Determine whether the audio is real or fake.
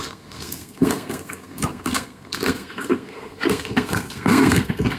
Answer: fake